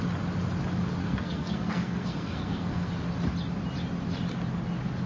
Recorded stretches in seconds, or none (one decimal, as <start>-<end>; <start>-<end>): 0.0-1.0; 2.9-5.1